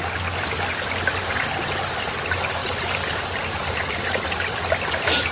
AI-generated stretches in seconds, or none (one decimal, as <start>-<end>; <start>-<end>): none